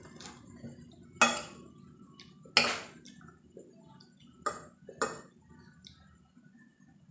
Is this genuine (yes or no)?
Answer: yes